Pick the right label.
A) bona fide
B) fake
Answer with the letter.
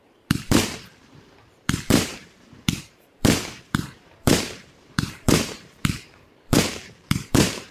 B